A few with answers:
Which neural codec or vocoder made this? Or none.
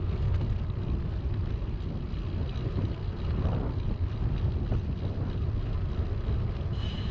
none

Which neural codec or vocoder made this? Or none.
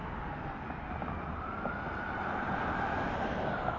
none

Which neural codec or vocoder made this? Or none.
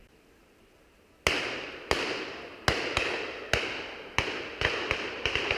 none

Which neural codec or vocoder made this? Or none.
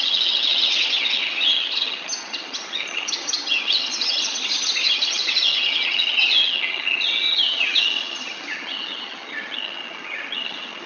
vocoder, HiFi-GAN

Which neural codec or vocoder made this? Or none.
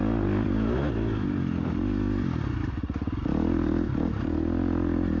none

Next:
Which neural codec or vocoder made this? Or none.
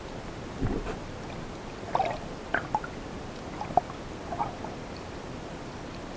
none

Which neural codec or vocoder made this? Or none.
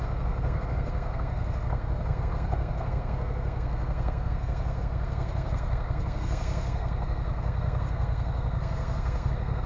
codec, SNAC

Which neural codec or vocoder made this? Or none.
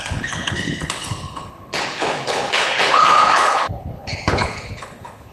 codec, HILCodec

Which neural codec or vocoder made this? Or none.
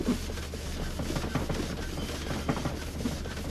none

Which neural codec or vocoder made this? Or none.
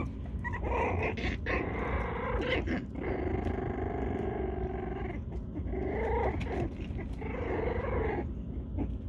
none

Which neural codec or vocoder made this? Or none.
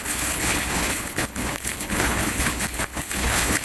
codec, HILCodec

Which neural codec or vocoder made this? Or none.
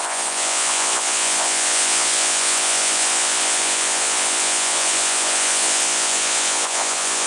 vocoder, Vocos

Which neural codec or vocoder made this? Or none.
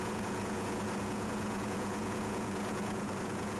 vocoder, Vocos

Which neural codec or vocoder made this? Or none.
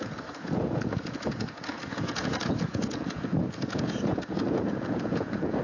vocoder, Vocos